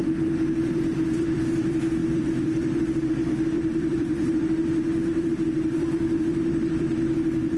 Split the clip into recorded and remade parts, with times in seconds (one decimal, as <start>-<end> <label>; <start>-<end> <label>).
0.0-0.6 recorded; 0.6-7.6 remade